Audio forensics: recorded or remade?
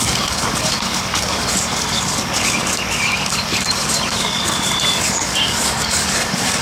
remade